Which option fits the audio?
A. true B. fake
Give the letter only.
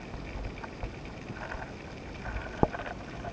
A